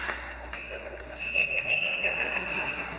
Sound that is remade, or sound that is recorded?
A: remade